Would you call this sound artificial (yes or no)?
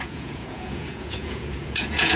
yes